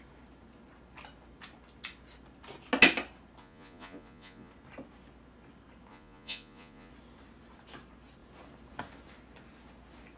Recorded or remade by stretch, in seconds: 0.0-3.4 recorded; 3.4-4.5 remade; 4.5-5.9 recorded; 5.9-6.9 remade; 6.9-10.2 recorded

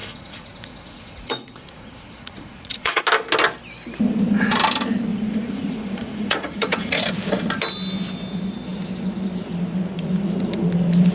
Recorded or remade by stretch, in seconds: 0.0-3.0 remade; 3.0-5.1 recorded; 5.1-7.0 remade; 7.0-11.1 recorded

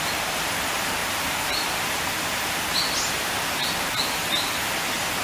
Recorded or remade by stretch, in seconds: 0.0-5.2 recorded

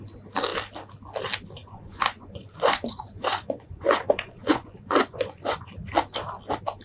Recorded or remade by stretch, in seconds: 0.0-1.6 recorded; 1.6-5.7 remade; 5.7-6.8 recorded

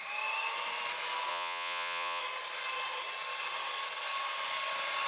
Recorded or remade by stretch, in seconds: 0.0-1.3 recorded; 1.3-2.2 remade; 2.2-5.1 recorded

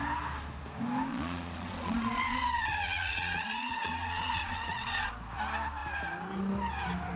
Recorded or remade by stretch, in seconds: 0.0-1.1 recorded; 1.1-5.1 remade; 5.1-7.2 recorded

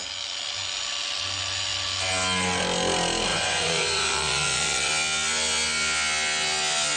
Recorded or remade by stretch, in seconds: 0.0-3.3 recorded; 3.3-4.9 remade; 4.9-7.0 recorded

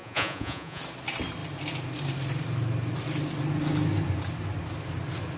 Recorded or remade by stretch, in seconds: 0.0-0.8 remade; 0.8-5.4 recorded